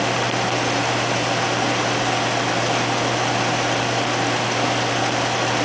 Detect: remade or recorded recorded